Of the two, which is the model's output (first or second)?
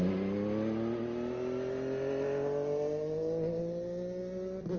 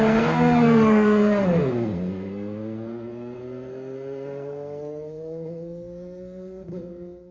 second